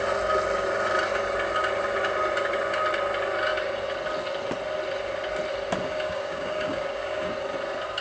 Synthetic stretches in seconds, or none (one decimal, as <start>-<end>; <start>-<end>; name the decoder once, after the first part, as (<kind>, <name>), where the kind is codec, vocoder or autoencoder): 5.9-7.3 (codec, DAC)